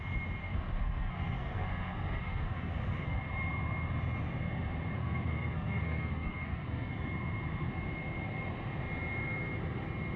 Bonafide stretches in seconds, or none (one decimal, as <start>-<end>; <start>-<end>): 0.0-0.4; 3.2-5.0; 6.9-10.2